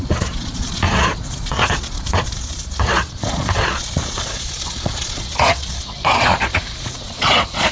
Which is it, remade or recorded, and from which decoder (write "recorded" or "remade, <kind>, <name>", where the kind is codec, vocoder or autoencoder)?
remade, vocoder, Vocos